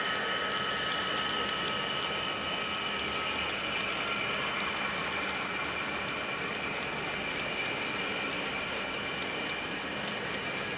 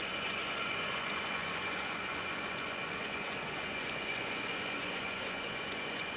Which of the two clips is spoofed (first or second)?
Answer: second